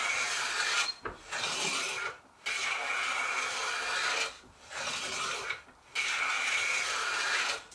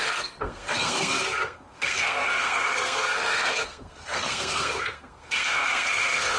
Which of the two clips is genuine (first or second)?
first